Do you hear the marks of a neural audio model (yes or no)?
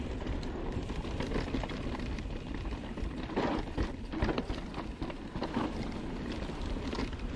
no